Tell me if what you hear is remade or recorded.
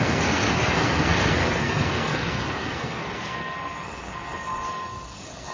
remade